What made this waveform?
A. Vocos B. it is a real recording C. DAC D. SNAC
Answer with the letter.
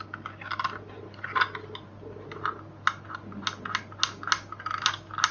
B